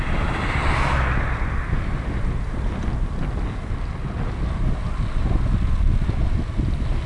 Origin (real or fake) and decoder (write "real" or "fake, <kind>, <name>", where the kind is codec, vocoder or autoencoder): real